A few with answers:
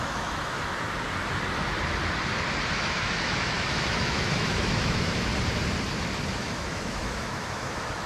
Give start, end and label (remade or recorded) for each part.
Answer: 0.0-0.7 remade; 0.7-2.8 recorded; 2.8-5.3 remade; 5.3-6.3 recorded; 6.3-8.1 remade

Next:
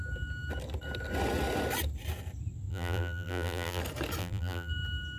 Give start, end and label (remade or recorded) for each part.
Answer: 0.0-2.7 recorded; 2.7-3.8 remade; 3.8-4.2 recorded; 4.2-4.7 remade; 4.7-5.2 recorded

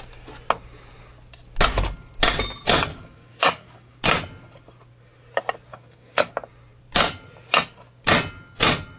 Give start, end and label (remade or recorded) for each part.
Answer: 0.0-2.9 recorded; 2.9-4.0 remade; 4.0-5.7 recorded; 5.7-6.3 remade; 6.3-9.0 recorded

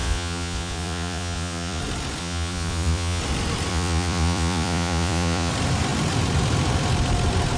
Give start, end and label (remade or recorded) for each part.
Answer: 0.0-1.8 remade; 1.8-2.2 recorded; 2.2-3.2 remade; 3.2-3.7 recorded; 3.7-5.5 remade; 5.5-7.6 recorded

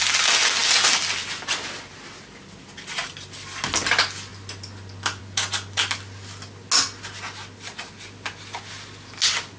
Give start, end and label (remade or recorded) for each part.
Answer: 0.0-9.6 recorded